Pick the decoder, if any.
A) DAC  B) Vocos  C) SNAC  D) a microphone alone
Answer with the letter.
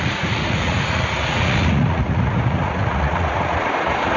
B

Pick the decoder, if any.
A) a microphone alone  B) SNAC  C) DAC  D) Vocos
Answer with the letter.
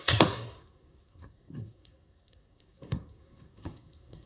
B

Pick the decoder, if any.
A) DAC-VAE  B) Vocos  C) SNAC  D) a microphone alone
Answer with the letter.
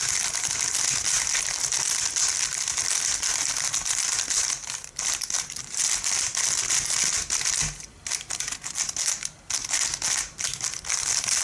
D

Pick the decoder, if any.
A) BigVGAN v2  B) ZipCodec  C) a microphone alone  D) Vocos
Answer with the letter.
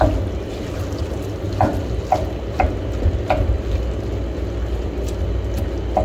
C